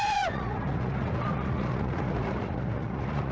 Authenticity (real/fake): fake